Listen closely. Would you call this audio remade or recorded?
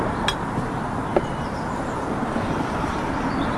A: remade